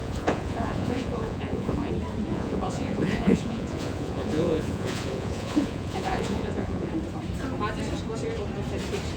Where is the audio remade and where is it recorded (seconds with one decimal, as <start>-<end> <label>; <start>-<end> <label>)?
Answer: 0.0-1.9 remade; 1.9-2.3 recorded; 2.3-6.9 remade; 6.9-9.2 recorded